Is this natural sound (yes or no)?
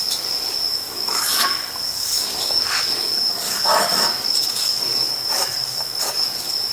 no